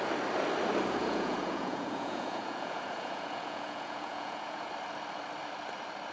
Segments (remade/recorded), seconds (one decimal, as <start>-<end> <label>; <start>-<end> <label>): 0.0-1.0 recorded; 1.0-4.7 remade; 4.7-6.1 recorded